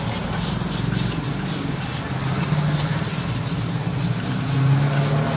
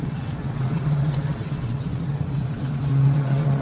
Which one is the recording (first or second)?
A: first